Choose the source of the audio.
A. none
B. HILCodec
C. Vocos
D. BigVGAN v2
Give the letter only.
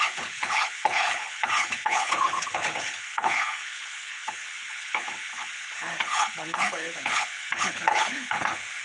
B